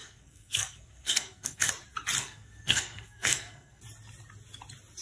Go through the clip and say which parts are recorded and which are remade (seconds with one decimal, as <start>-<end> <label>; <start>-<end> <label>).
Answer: 0.0-1.7 remade; 1.7-2.2 recorded; 2.2-3.8 remade; 3.8-5.0 recorded